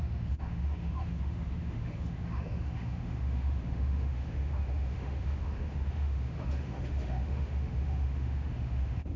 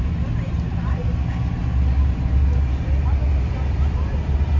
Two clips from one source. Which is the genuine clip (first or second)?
second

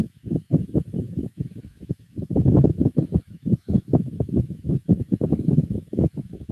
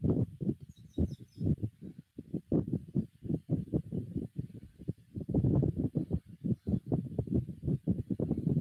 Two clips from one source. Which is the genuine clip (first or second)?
second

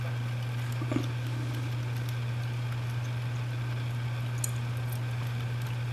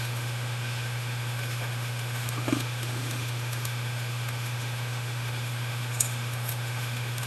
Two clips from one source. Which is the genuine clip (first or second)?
first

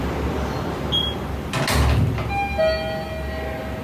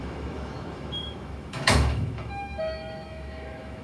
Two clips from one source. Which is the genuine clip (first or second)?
first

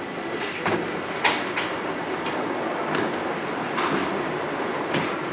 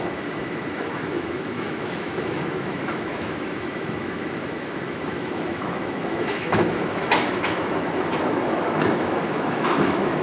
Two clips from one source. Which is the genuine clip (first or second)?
first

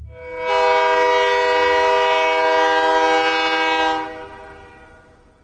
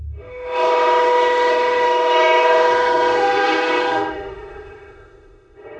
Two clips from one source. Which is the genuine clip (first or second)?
first